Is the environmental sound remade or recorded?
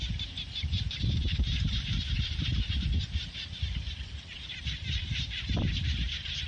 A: remade